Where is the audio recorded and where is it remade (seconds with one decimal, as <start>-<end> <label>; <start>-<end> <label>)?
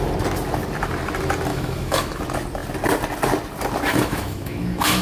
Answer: 0.0-1.5 recorded; 1.5-2.2 remade; 2.2-3.9 recorded; 3.9-5.0 remade